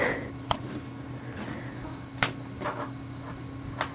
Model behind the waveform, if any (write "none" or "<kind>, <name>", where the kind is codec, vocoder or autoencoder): none